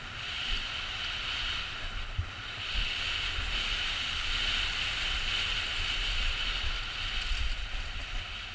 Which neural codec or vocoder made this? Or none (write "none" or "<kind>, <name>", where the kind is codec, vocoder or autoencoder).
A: none